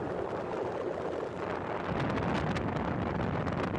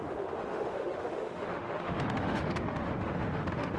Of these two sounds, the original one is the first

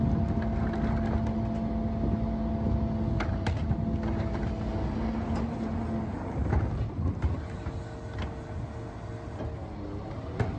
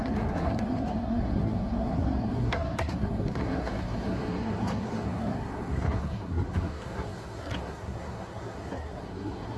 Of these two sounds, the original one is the first